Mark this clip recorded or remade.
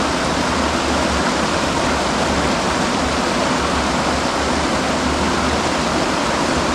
recorded